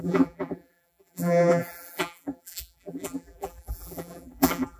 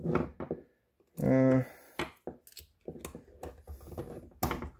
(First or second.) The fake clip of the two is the first